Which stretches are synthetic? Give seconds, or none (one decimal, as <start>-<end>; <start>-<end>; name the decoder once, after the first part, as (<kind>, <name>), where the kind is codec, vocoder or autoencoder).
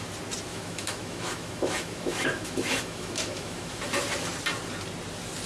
0.5-3.8 (autoencoder, DAC-VAE)